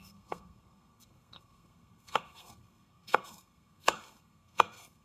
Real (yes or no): no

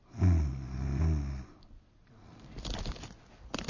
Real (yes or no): yes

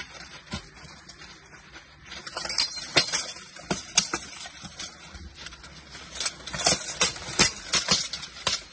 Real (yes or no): yes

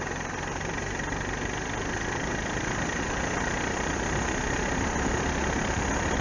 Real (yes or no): yes